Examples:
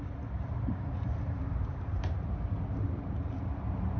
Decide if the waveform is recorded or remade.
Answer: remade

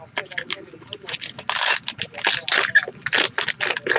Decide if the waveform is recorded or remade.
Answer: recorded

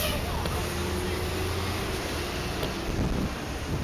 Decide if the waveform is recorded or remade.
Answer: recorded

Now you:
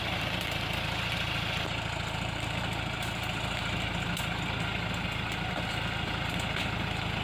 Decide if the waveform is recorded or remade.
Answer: recorded